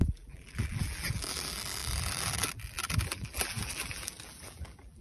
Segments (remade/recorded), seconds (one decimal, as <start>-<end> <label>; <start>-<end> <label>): 0.0-5.0 remade

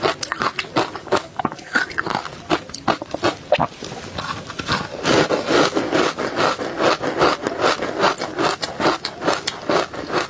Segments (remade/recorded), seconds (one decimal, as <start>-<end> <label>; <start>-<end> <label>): 0.0-1.0 recorded; 1.0-1.8 remade; 1.8-10.3 recorded

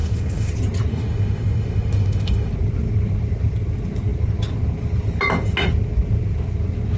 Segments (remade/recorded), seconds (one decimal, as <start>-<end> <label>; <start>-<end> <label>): 0.0-0.5 remade; 0.5-0.9 recorded; 0.9-2.5 remade; 2.5-7.0 recorded

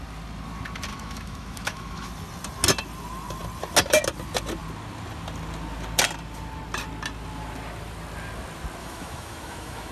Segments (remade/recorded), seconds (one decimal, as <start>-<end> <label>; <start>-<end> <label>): 0.0-0.9 recorded; 0.9-2.1 remade; 2.1-8.8 recorded; 8.8-9.9 remade

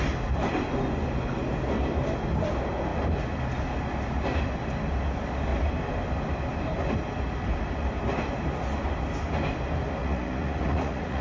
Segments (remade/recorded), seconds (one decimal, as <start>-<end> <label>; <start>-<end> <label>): 0.0-10.0 recorded; 10.0-11.2 remade

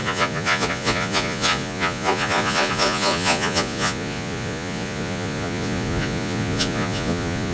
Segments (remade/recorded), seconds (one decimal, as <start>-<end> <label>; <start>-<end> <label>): 0.0-7.5 remade

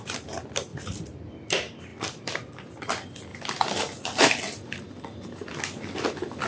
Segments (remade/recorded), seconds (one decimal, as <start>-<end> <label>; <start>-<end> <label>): 0.0-0.7 recorded; 0.7-1.3 remade; 1.3-1.9 recorded; 1.9-2.7 remade; 2.7-3.3 recorded; 3.3-5.3 remade; 5.3-6.5 recorded

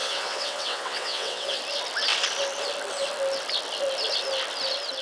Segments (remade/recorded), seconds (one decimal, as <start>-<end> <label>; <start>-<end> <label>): 0.0-1.6 remade; 1.6-5.0 recorded